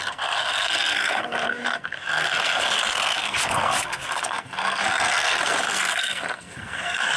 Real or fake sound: fake